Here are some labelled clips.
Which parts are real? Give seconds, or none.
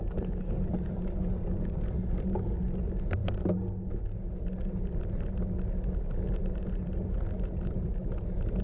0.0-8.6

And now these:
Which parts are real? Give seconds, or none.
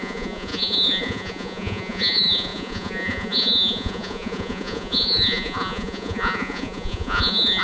none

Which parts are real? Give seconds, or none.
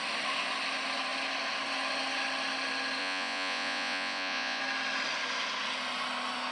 0.0-3.0; 4.6-6.5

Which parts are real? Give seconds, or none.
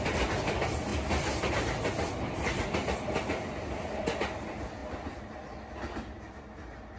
0.0-7.0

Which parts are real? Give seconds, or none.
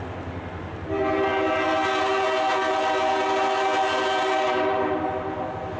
0.0-5.8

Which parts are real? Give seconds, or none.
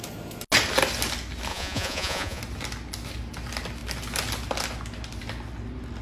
0.0-1.5; 2.4-6.0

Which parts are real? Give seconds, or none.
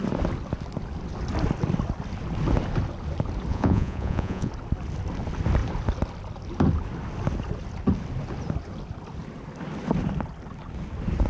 0.0-3.5; 4.5-11.3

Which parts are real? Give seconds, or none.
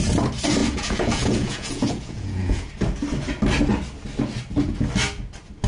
0.0-0.6; 2.7-5.7